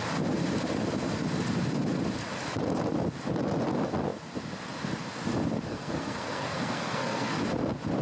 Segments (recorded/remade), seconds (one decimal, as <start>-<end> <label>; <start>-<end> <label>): 0.0-5.7 recorded; 5.7-7.4 remade; 7.4-8.0 recorded